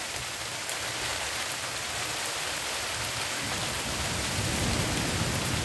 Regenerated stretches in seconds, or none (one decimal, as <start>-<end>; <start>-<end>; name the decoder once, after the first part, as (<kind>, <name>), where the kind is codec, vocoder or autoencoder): none